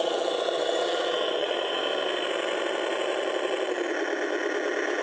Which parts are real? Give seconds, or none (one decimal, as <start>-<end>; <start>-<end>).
1.8-5.0